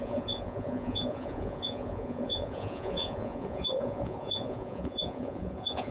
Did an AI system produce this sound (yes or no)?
yes